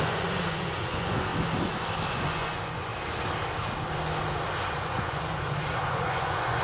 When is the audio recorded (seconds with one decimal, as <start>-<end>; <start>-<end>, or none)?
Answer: 1.3-2.1; 2.9-4.6